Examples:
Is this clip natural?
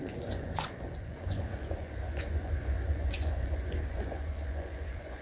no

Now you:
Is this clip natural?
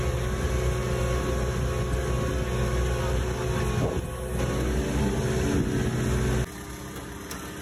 yes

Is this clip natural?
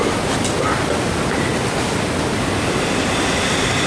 yes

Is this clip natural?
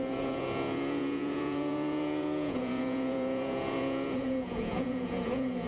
no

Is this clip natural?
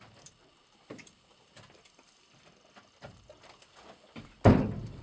yes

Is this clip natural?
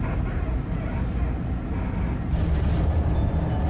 yes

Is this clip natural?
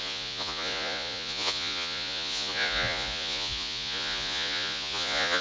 no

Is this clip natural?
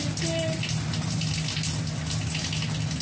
yes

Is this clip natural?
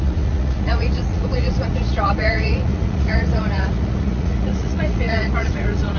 no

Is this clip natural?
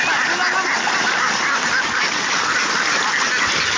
yes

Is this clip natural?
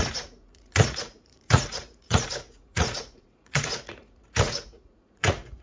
no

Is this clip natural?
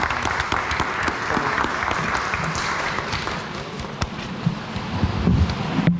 yes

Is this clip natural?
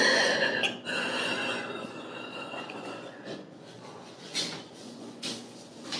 no